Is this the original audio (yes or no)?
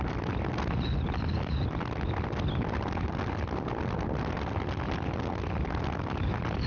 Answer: yes